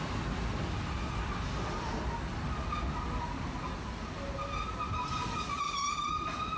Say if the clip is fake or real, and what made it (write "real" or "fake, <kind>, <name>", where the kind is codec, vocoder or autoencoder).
real